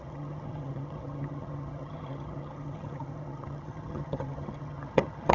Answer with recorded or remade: remade